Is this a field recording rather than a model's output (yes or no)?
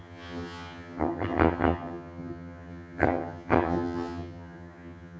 no